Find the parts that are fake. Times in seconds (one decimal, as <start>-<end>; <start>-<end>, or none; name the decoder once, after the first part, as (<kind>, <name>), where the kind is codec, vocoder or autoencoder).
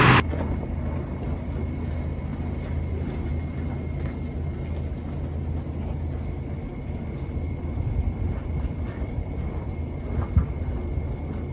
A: 2.3-3.3 (vocoder, BigVGAN v2); 6.7-9.7